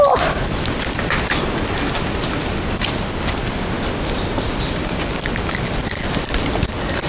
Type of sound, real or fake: real